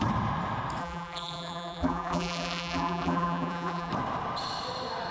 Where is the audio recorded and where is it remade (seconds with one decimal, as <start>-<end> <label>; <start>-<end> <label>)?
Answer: 0.0-0.8 recorded; 0.8-3.9 remade; 3.9-5.1 recorded